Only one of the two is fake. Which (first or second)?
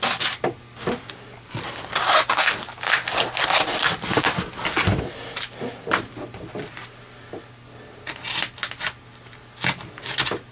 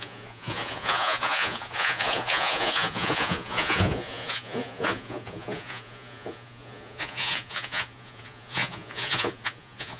second